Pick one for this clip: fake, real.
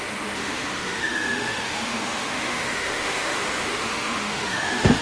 fake